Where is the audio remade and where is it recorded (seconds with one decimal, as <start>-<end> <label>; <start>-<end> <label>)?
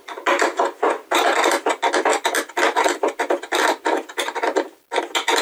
0.0-0.8 remade; 0.8-2.1 recorded; 2.1-5.0 remade; 5.0-5.4 recorded